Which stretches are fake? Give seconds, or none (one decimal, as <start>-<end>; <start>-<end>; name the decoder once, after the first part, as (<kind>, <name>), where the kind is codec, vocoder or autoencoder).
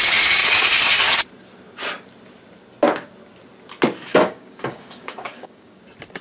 4.1-5.8 (codec, DAC)